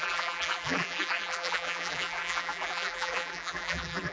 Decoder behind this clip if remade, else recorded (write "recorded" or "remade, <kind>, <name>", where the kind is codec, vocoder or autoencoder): remade, vocoder, BigVGAN v2